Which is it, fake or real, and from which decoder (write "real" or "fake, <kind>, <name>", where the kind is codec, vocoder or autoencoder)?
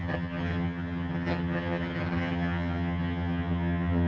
fake, vocoder, HiFi-GAN